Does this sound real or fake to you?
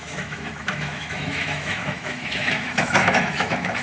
fake